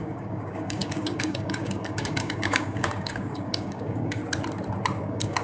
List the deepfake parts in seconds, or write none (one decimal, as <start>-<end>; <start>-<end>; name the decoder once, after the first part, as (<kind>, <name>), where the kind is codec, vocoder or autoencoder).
0.0-4.2 (codec, DAC); 5.0-5.4